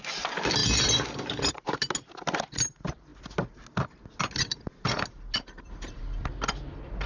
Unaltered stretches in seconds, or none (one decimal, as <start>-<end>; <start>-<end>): 0.0-7.1